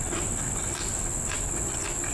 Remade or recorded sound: recorded